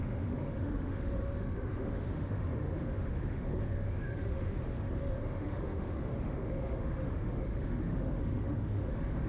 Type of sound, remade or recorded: remade